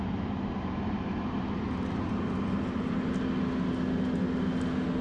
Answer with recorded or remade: recorded